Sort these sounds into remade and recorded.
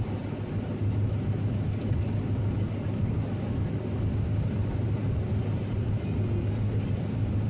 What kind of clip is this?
recorded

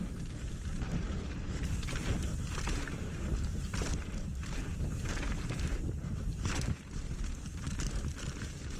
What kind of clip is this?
remade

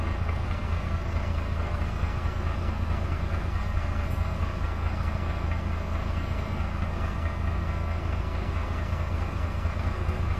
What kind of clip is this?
remade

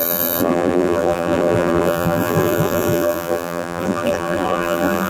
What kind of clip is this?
remade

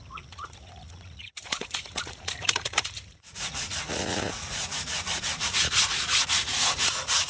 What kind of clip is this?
remade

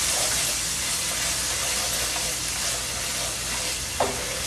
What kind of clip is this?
recorded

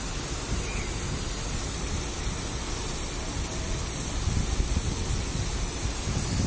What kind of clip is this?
recorded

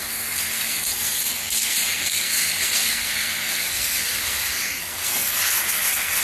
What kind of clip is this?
remade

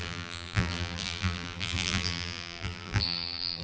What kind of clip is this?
remade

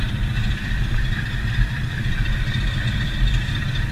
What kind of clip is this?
remade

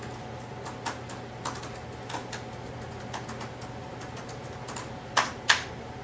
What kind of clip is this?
recorded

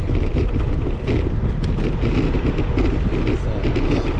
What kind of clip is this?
recorded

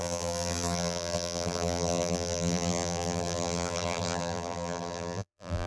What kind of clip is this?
remade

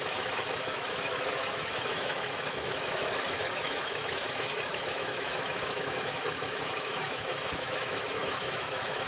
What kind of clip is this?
remade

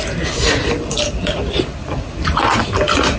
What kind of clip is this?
recorded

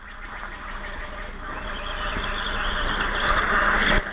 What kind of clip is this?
recorded